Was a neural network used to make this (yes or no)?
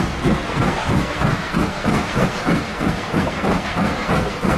yes